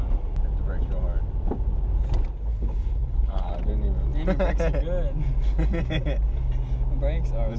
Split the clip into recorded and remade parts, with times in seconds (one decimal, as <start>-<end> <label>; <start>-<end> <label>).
0.0-2.5 recorded; 2.5-3.5 remade; 3.5-7.6 recorded